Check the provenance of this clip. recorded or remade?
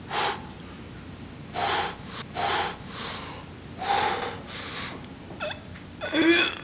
recorded